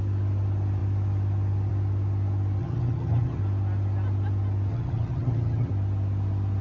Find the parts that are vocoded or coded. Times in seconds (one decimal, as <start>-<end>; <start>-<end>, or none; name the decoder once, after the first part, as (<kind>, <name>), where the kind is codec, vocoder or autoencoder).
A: 2.6-3.4 (vocoder, HiFi-GAN); 4.7-5.7